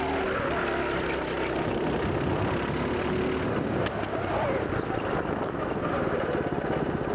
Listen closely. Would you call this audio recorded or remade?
recorded